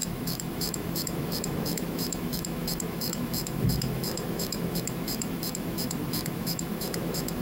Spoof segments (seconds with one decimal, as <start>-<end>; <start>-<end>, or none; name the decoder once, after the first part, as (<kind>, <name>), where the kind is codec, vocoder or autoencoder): 0.0-7.4 (autoencoder, DAC-VAE)